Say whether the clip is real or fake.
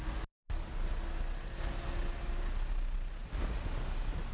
real